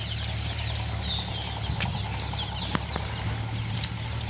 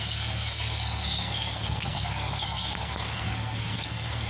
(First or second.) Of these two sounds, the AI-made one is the second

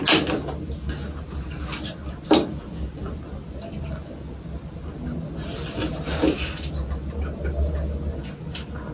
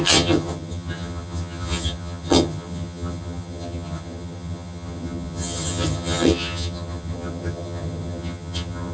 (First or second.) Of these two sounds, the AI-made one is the second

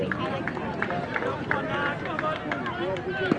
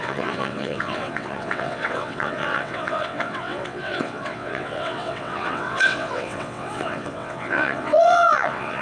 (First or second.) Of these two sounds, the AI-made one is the second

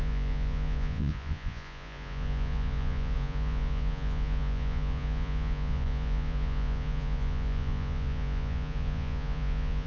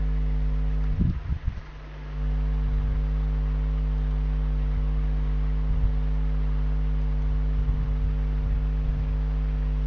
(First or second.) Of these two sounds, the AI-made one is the first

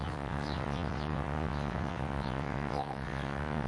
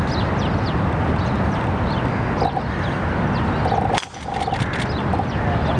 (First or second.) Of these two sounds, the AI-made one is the first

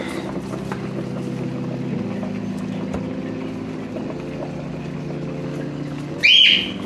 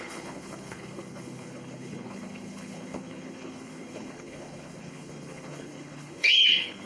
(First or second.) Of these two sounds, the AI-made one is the second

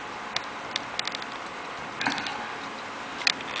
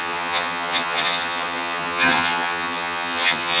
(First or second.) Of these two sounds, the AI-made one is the second